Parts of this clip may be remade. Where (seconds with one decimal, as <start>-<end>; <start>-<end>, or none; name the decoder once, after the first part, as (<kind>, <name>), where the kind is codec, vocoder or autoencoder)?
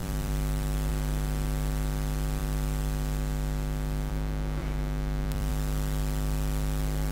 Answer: 0.0-0.9 (vocoder, BigVGAN v2); 4.6-5.5